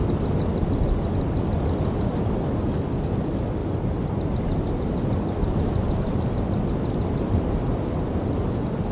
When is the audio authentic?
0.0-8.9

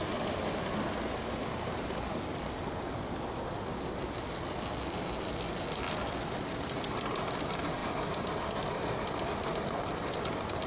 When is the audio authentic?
0.0-10.7

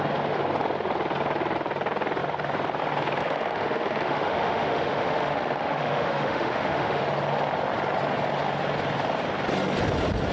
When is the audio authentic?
0.0-3.2; 7.0-10.3

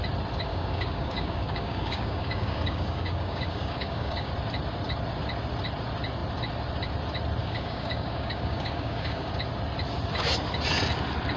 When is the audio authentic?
0.0-0.5; 4.3-7.4; 9.3-11.4

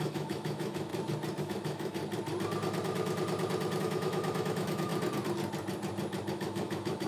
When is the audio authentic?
0.9-1.4; 2.0-3.8; 4.9-6.3